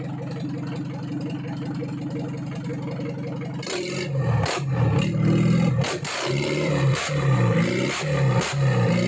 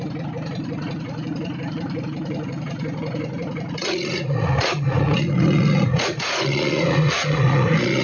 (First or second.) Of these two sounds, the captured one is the first